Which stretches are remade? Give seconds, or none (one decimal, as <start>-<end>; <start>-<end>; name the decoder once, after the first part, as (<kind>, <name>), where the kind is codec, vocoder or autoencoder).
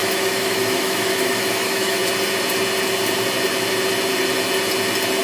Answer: 0.0-2.0 (autoencoder, DAC-VAE)